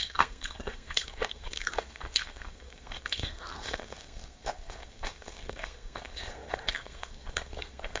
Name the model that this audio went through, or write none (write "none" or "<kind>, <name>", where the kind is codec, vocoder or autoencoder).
codec, SNAC